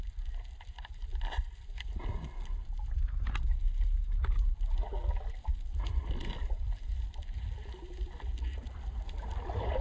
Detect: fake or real real